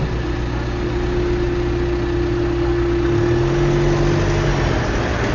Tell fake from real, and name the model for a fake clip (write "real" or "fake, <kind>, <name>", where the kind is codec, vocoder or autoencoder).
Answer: real